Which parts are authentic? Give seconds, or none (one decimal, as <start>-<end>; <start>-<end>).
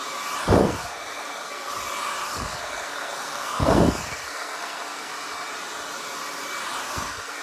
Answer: 0.0-0.6; 1.7-2.2; 5.1-6.8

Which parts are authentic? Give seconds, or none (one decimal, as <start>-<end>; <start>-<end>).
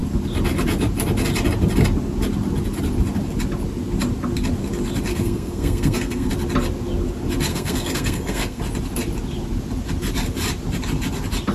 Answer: 0.0-5.1; 6.3-7.5; 8.6-11.5